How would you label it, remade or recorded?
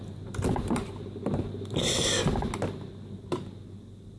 recorded